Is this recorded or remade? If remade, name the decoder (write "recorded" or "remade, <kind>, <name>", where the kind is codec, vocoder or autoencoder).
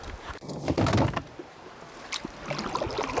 recorded